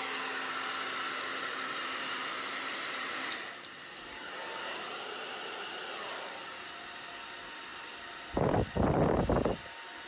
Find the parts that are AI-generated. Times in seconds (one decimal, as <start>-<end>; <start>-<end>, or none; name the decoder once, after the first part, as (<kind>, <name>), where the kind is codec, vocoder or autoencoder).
1.3-6.1 (vocoder, BigVGAN v2)

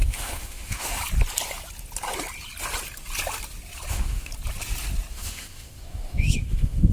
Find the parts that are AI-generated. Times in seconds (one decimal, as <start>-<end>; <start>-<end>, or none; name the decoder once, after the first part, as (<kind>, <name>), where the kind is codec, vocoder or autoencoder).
0.0-1.0 (autoencoder, DAC-VAE); 3.9-4.3; 5.1-6.9

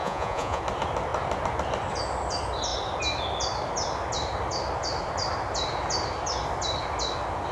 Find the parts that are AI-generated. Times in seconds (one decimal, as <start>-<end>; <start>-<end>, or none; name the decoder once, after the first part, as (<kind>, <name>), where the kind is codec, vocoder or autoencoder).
0.0-0.6 (vocoder, Vocos)

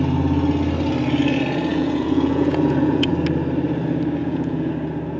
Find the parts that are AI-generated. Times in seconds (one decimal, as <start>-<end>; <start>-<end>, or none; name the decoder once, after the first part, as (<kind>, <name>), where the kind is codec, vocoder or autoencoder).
1.7-3.1 (vocoder, Vocos); 4.2-4.7